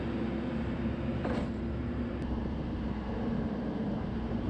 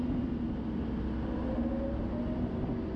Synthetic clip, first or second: first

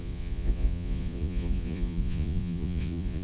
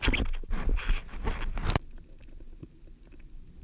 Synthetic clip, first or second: first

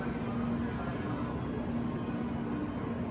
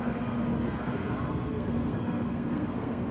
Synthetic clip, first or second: second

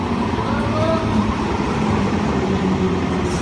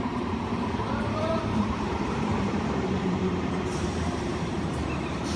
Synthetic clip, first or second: second